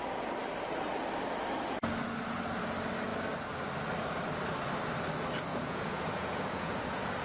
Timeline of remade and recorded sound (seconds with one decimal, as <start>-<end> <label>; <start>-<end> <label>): 0.0-5.5 recorded; 5.5-7.2 remade

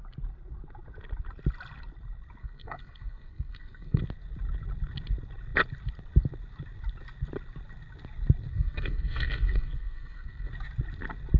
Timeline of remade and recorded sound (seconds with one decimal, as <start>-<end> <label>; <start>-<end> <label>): 0.0-2.4 recorded; 2.4-4.0 remade; 4.0-8.5 recorded; 8.5-10.5 remade; 10.5-11.4 recorded

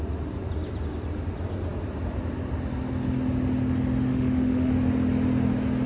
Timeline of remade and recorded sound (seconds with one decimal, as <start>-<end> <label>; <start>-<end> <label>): 0.0-4.1 recorded; 4.1-4.7 remade; 4.7-5.9 recorded

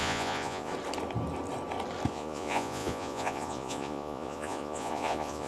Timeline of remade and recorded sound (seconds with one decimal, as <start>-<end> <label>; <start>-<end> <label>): 0.0-0.7 remade; 0.7-2.1 recorded; 2.1-5.5 remade

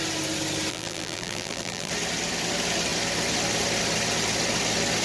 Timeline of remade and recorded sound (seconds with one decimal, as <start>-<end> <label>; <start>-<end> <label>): 0.0-0.7 recorded; 0.7-1.9 remade; 1.9-5.0 recorded